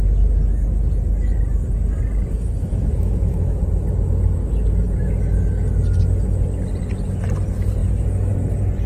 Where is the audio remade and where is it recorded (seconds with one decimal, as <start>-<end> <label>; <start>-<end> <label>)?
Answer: 0.0-2.7 recorded; 2.7-3.6 remade; 3.6-8.9 recorded